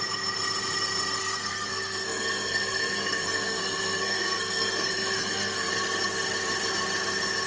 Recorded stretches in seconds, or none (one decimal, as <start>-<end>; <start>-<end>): 0.0-1.2; 5.7-7.5